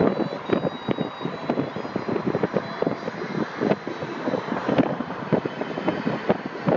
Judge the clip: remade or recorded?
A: recorded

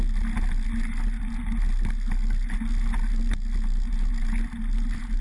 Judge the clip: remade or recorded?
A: recorded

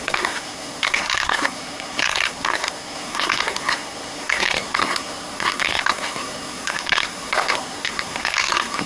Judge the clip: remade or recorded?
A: remade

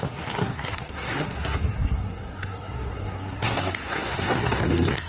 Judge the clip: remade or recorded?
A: remade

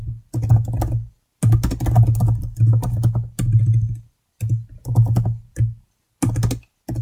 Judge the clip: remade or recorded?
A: recorded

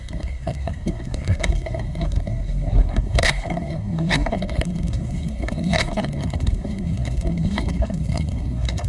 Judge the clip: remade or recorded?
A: remade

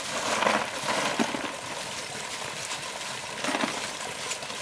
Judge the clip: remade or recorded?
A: recorded